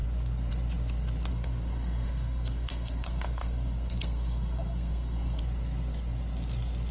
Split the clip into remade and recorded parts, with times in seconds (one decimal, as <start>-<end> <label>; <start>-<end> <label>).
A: 0.0-1.3 recorded; 1.3-5.4 remade; 5.4-6.9 recorded